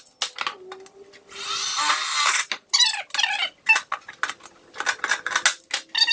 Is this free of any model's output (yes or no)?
yes